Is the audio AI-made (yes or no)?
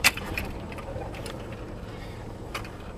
yes